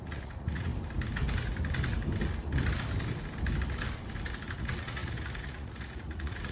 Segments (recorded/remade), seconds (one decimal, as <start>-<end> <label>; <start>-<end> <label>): 0.0-0.7 remade; 0.7-4.6 recorded; 4.6-6.5 remade